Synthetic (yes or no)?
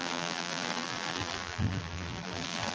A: yes